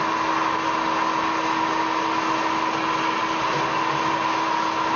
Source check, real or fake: real